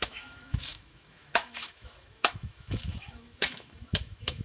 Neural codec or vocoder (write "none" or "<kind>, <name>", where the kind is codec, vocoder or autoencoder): autoencoder, DAC-VAE